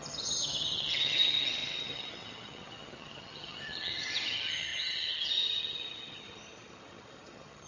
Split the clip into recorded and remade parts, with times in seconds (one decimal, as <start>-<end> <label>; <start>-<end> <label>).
0.0-7.7 remade